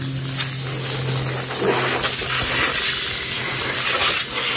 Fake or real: real